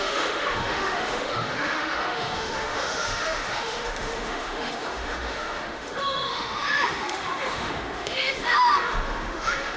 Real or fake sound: fake